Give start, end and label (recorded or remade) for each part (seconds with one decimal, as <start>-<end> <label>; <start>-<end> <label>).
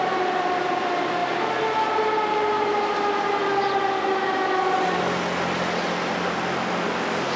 0.0-7.4 recorded